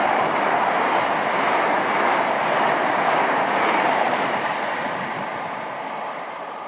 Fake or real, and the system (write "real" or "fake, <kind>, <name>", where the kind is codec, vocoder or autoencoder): fake, vocoder, BigVGAN v2